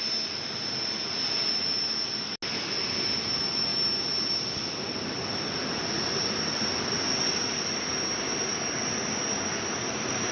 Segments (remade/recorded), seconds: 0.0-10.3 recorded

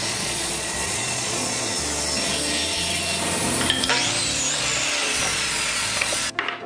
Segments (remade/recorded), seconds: 0.0-1.7 remade; 1.7-5.0 recorded; 5.0-6.3 remade; 6.3-6.7 recorded